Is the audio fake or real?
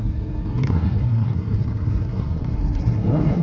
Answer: fake